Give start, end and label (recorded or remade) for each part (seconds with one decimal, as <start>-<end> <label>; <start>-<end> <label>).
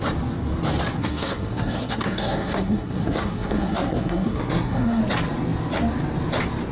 0.0-1.0 recorded; 1.0-5.0 remade; 5.0-6.7 recorded